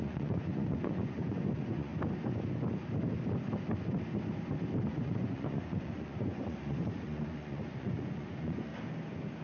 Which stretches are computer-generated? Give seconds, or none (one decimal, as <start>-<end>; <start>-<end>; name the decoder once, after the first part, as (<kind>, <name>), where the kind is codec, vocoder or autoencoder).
0.0-1.9 (vocoder, Vocos); 4.9-8.7